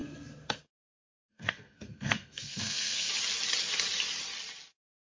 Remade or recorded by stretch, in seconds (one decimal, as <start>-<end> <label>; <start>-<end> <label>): 0.0-3.1 remade; 3.1-5.2 recorded